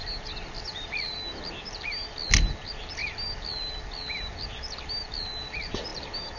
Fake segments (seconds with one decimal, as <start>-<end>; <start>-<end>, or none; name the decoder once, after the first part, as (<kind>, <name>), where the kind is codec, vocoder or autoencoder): none